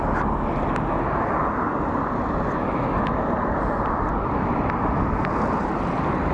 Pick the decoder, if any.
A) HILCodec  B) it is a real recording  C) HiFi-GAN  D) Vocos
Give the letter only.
B